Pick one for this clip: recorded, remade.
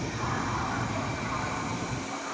recorded